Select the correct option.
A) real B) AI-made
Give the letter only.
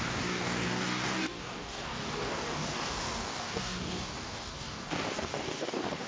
B